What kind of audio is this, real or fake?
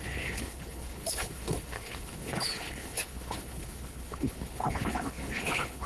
fake